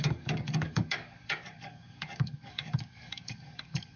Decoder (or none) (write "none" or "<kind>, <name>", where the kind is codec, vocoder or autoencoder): codec, DAC